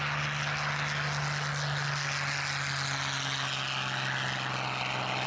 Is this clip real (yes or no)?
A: yes